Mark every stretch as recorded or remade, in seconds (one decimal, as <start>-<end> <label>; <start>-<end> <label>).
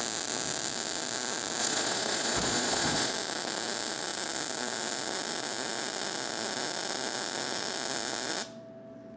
0.0-1.6 recorded; 1.6-3.1 remade; 3.1-9.2 recorded